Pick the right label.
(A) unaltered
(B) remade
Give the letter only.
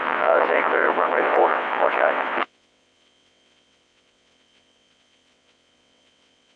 B